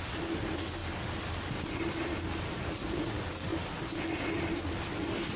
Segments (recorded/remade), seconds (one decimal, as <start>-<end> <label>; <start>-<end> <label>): 0.0-0.8 recorded; 0.8-2.2 remade; 2.2-5.4 recorded